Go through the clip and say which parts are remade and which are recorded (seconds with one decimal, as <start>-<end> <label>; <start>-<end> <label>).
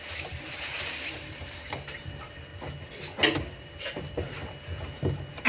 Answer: 0.0-2.5 remade; 2.5-3.5 recorded; 3.5-4.4 remade; 4.4-5.5 recorded